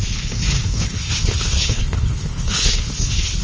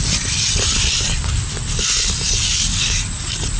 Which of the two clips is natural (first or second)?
second